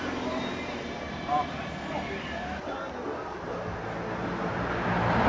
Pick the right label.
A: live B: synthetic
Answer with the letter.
A